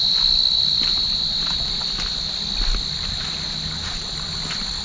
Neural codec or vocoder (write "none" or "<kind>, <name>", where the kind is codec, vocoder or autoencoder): none